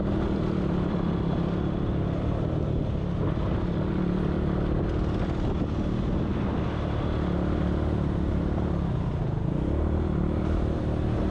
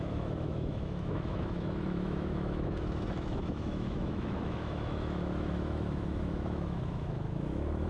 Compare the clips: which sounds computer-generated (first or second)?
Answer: second